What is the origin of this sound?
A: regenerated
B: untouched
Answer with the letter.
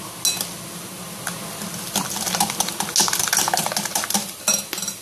B